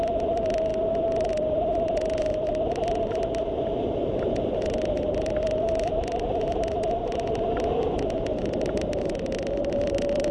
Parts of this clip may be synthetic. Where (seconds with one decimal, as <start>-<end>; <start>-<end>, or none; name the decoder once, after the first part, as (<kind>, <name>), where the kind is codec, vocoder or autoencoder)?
none